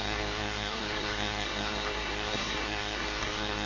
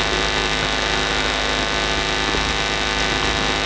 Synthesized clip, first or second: first